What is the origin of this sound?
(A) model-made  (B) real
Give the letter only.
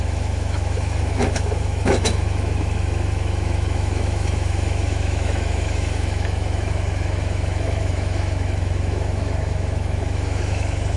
A